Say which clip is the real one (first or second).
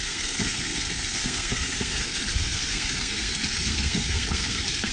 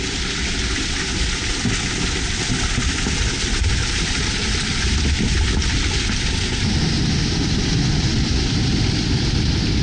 second